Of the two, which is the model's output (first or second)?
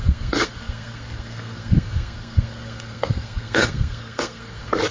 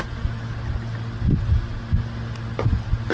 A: first